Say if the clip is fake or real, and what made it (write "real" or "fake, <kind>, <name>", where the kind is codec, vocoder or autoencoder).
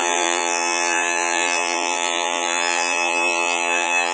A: fake, vocoder, BigVGAN v2